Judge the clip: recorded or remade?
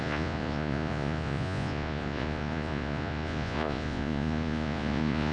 remade